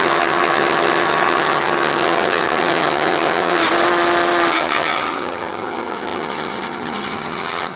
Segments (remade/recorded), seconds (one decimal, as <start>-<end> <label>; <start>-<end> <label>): 0.0-3.6 remade; 3.6-4.5 recorded; 4.5-7.8 remade